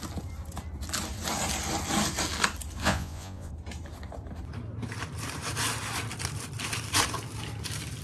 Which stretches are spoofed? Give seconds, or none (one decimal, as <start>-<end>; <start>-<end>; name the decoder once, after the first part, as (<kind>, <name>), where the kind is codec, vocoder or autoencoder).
2.8-3.5 (vocoder, Vocos)